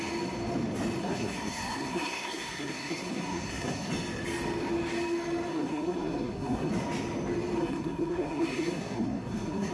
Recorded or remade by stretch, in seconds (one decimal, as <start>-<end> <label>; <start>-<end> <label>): 0.0-1.0 recorded; 1.0-3.9 remade; 3.9-5.5 recorded; 5.5-6.7 remade; 6.7-7.6 recorded; 7.6-9.7 remade